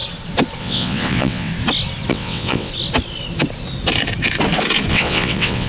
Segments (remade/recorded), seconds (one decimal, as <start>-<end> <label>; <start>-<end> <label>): 0.0-0.6 recorded; 0.6-1.5 remade; 1.5-2.1 recorded; 2.1-2.7 remade; 2.7-4.9 recorded; 4.9-5.7 remade